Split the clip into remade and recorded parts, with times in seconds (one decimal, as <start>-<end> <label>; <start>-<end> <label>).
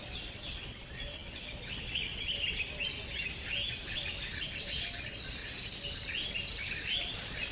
0.0-2.1 remade; 2.1-4.6 recorded; 4.6-5.4 remade; 5.4-7.0 recorded; 7.0-7.5 remade